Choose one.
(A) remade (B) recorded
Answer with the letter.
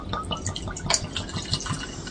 B